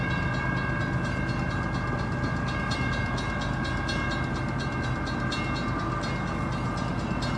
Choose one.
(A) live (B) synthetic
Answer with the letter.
A